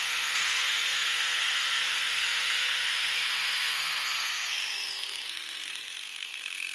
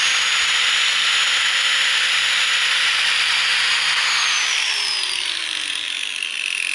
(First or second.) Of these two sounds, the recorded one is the second